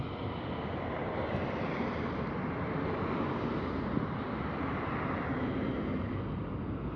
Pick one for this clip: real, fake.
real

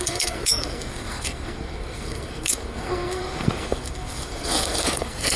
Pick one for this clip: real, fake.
fake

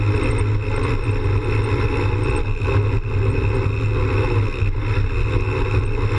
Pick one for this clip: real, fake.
real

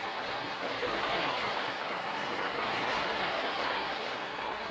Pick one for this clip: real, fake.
fake